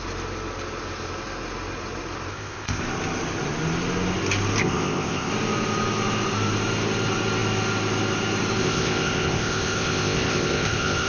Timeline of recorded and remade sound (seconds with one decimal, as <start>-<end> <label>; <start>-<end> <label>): 0.0-2.3 recorded; 2.3-2.8 remade; 2.8-4.6 recorded; 4.6-5.3 remade; 5.3-8.6 recorded; 8.6-11.1 remade